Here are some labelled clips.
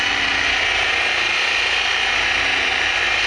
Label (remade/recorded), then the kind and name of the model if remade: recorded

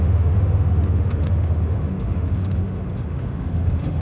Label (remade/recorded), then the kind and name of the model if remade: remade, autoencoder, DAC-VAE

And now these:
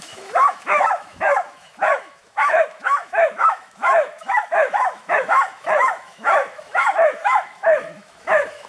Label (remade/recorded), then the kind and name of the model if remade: remade, autoencoder, DAC-VAE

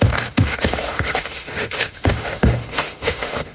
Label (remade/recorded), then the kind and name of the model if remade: remade, autoencoder, DAC-VAE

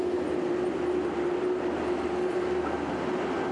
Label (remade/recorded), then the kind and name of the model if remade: recorded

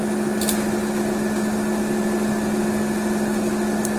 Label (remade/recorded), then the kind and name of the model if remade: recorded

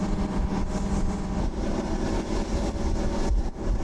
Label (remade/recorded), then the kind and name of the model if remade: recorded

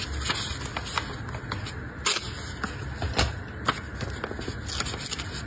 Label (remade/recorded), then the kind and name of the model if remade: recorded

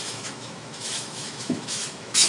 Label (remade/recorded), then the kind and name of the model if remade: remade, autoencoder, DAC-VAE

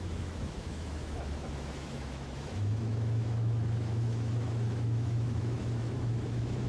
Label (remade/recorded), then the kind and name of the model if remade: remade, autoencoder, DAC-VAE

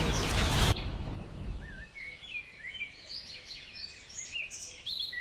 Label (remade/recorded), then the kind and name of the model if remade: remade, autoencoder, DAC-VAE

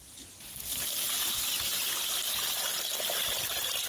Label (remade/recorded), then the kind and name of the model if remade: recorded